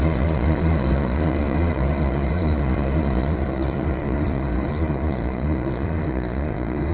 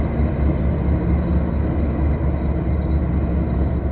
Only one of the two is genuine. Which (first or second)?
second